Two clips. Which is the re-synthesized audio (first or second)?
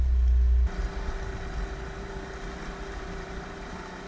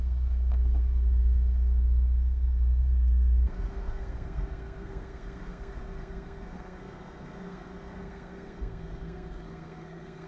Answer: second